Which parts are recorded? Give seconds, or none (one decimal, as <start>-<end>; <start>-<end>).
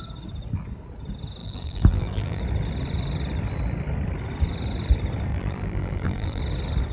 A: 0.0-1.4; 2.4-5.3; 6.4-6.9